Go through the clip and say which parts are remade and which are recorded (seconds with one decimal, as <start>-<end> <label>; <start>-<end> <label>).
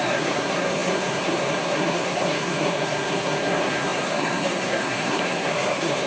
0.0-6.1 remade